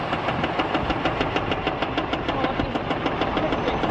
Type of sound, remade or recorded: recorded